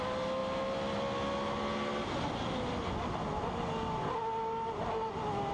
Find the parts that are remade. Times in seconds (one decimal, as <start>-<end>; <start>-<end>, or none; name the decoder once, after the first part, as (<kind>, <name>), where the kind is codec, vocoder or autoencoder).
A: none